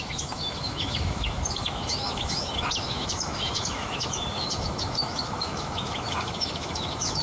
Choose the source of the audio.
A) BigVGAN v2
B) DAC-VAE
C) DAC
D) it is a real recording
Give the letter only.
B